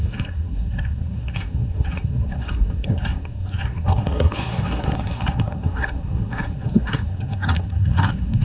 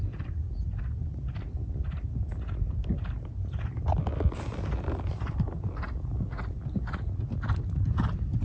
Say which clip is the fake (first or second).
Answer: first